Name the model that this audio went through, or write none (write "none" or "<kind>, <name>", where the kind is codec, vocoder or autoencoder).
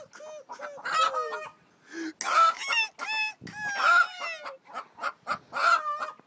none